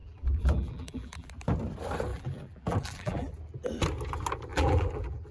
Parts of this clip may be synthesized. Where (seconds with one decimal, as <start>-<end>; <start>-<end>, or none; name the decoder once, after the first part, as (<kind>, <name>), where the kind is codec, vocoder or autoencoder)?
0.0-1.3 (vocoder, BigVGAN v2); 2.1-3.3; 4.5-5.3